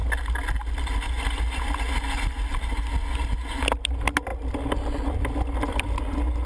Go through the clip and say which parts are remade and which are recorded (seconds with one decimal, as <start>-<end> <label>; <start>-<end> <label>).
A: 0.0-4.3 recorded; 4.3-6.0 remade; 6.0-6.5 recorded